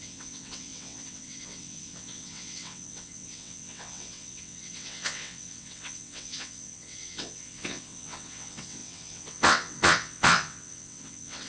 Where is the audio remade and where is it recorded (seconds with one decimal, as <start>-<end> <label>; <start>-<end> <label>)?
0.0-11.5 remade